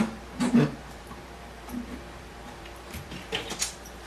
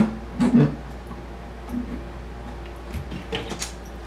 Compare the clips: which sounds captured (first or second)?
second